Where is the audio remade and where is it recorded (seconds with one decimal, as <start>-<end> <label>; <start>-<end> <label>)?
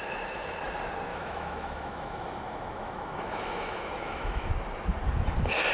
0.0-1.1 recorded; 1.1-4.5 remade; 4.5-5.7 recorded